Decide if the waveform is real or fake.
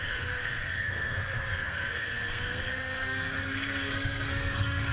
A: fake